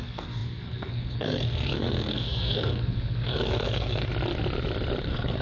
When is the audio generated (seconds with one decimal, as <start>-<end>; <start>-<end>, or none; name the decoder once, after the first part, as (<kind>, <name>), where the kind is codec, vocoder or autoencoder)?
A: 0.0-4.1 (codec, SNAC); 5.0-5.4